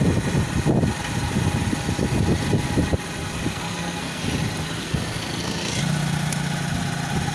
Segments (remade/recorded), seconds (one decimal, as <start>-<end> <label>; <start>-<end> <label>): 0.0-3.5 recorded; 3.5-4.2 remade; 4.2-4.8 recorded; 4.8-5.8 remade; 5.8-7.3 recorded